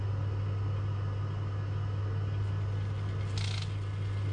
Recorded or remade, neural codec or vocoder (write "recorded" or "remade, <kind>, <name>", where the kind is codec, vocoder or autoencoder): recorded